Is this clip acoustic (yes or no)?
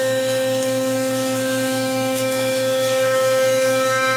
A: no